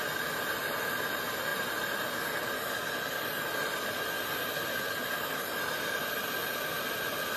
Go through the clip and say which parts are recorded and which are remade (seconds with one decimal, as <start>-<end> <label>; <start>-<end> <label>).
0.0-7.4 recorded